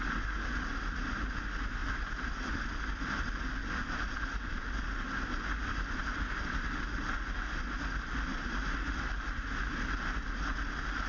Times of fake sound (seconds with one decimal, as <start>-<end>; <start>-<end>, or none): 1.8-2.5